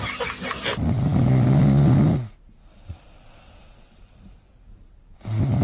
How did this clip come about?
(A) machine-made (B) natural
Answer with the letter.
B